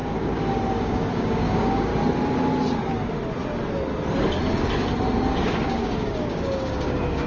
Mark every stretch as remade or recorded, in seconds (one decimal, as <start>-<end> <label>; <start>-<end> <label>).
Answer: 0.0-1.9 remade; 1.9-5.2 recorded; 5.2-7.3 remade